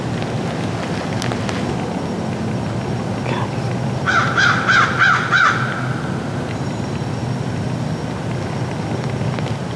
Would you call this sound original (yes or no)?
yes